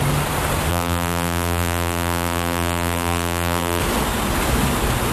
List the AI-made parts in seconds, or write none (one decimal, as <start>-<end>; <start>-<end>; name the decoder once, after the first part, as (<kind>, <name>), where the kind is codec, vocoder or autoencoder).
0.7-3.8 (vocoder, BigVGAN v2)